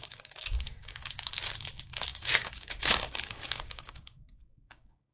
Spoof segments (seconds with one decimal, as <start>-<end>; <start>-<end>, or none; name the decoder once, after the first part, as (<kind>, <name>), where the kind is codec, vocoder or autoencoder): 0.0-5.1 (codec, DAC)

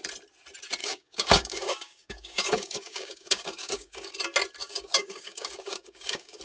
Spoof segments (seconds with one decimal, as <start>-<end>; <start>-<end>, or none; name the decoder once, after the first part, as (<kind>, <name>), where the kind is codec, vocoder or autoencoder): 0.8-4.1 (codec, DAC); 4.6-6.4

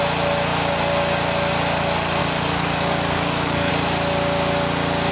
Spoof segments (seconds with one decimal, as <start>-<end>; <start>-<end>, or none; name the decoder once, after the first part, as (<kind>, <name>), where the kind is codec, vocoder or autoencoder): 2.2-3.7 (codec, DAC)

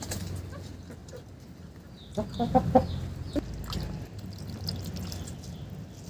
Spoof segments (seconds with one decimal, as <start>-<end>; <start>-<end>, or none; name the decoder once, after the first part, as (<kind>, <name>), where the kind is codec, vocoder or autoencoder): none

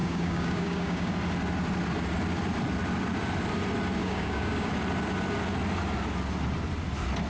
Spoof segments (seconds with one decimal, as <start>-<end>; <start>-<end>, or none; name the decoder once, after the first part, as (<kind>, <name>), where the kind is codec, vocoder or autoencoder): 0.0-1.1 (codec, DAC); 4.0-4.7